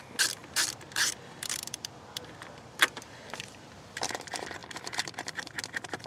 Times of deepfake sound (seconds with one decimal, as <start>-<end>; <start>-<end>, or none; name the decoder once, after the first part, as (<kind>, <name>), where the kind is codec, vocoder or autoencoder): 0.4-4.1 (vocoder, BigVGAN v2); 4.6-5.5